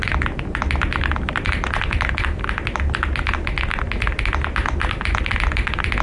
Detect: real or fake real